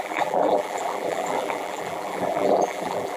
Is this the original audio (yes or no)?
no